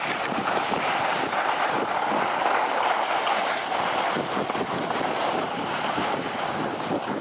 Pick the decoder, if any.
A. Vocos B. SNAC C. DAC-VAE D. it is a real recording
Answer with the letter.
D